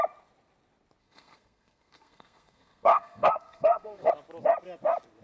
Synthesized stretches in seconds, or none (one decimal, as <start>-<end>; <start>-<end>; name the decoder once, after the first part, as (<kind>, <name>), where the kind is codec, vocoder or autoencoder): 1.0-4.1 (codec, SNAC)